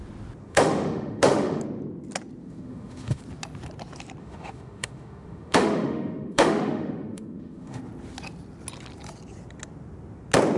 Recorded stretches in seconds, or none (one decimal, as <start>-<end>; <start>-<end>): 0.0-0.5; 1.6-2.4; 3.2-4.2; 7.8-10.6